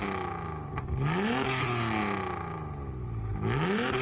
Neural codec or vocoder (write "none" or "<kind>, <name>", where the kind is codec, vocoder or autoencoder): none